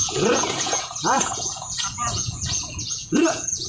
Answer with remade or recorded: remade